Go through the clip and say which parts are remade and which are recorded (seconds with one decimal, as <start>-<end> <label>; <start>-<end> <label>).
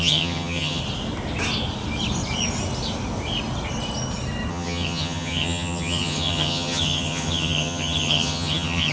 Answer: 0.0-0.8 remade; 0.8-4.5 recorded; 4.5-8.9 remade